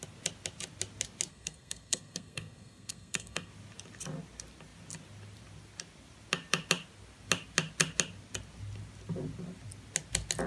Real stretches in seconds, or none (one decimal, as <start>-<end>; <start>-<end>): 0.0-1.3; 3.5-10.5